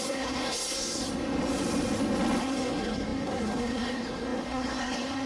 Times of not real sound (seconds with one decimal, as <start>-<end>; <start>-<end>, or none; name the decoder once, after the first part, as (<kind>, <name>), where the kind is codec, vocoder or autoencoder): 0.0-1.0 (codec, SNAC); 2.4-5.3